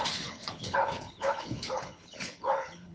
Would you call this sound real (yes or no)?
no